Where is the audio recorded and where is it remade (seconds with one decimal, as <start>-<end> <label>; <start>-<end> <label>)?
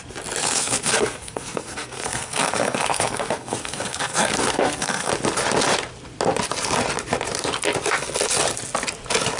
0.0-0.4 recorded; 0.4-5.1 remade; 5.1-9.4 recorded